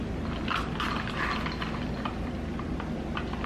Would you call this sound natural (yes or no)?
yes